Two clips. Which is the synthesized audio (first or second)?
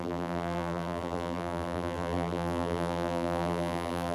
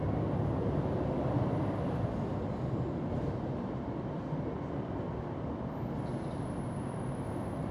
first